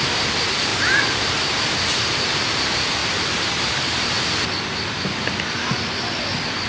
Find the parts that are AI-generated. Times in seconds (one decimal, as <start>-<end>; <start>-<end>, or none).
none